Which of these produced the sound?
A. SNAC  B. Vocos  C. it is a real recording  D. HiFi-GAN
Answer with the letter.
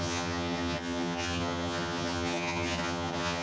D